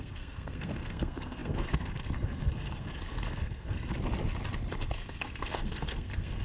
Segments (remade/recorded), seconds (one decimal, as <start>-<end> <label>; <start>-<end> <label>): 0.0-3.9 remade; 3.9-4.7 recorded; 4.7-6.4 remade